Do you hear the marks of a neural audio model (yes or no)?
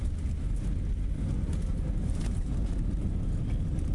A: no